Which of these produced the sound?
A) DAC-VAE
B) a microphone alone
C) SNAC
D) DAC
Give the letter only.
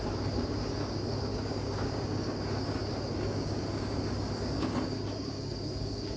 D